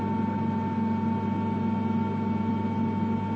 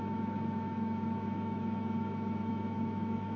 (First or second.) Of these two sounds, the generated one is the second